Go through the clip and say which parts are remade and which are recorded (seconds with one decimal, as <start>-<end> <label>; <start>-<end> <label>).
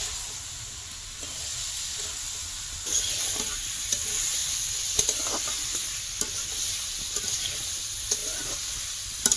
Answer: 0.0-1.5 recorded; 1.5-2.0 remade; 2.0-9.4 recorded